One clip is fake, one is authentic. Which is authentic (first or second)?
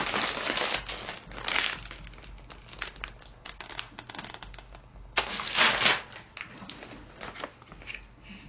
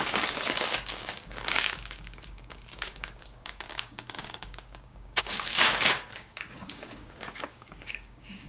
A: first